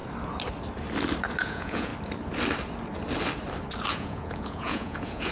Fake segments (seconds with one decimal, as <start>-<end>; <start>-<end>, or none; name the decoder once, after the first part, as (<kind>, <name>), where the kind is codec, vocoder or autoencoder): 1.4-1.9 (vocoder, Vocos); 3.9-5.3